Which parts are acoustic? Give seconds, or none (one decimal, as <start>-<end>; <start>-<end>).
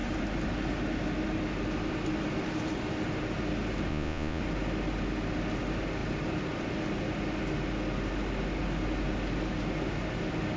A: 0.0-3.9; 4.4-10.6